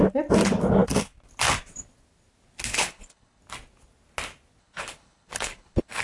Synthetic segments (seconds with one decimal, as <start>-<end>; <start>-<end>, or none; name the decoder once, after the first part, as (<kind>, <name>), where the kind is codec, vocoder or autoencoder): 2.7-3.4 (codec, HILCodec); 4.6-6.0

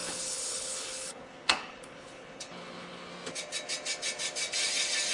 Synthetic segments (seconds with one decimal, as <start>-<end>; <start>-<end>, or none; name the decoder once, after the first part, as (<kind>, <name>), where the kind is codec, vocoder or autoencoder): 0.0-3.1 (codec, HILCodec)

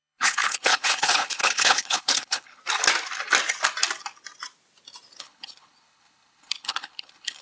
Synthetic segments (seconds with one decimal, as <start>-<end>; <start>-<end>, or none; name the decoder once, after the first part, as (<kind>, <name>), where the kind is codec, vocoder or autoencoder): 0.0-2.6 (codec, HILCodec); 5.2-7.4

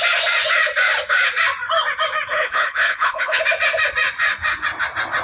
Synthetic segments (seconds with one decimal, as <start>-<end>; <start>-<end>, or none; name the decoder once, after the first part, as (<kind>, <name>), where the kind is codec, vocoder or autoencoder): 2.3-3.4 (codec, HILCodec)

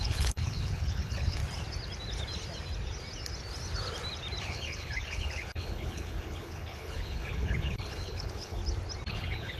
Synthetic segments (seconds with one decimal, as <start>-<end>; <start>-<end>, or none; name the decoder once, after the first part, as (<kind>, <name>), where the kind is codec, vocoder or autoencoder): 0.0-1.4 (codec, HILCodec); 4.4-8.6; 9.1-9.6